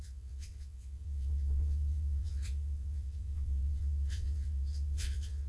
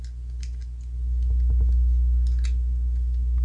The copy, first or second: first